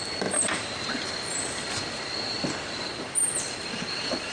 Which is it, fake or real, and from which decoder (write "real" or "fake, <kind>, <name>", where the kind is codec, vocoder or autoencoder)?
real